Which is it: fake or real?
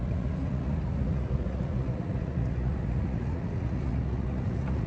fake